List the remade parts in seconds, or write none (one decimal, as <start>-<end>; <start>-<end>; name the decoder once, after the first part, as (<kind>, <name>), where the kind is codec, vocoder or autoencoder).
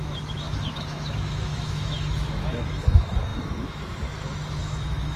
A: 0.0-5.2 (autoencoder, DAC-VAE)